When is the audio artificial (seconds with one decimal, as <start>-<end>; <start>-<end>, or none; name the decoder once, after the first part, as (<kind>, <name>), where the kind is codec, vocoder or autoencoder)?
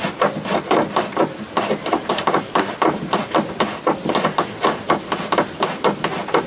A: none